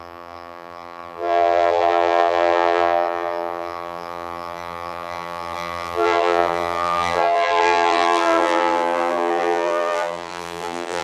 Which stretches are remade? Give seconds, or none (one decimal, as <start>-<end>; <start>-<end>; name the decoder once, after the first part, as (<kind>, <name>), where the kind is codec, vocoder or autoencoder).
0.0-11.0 (vocoder, BigVGAN v2)